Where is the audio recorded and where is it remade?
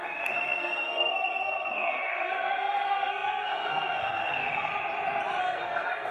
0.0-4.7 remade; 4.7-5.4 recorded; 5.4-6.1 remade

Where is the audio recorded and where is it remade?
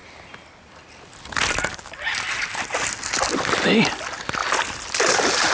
0.0-5.5 recorded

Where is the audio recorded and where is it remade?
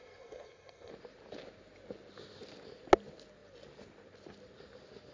0.0-0.9 remade; 0.9-5.1 recorded